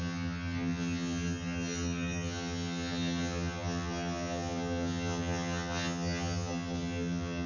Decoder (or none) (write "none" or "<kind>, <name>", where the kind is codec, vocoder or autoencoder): vocoder, HiFi-GAN